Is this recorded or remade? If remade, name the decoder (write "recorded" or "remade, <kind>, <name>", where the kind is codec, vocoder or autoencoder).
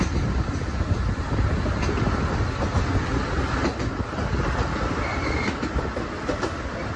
recorded